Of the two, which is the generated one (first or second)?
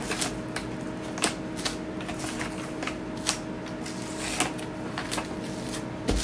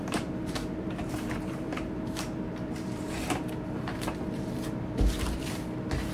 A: second